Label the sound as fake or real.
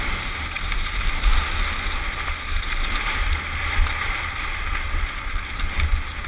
real